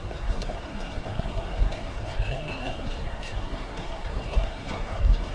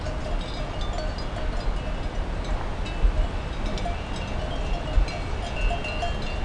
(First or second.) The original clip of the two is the second